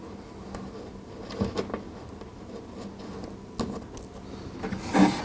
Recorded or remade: recorded